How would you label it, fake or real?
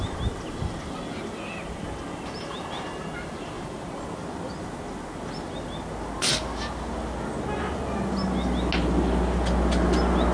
real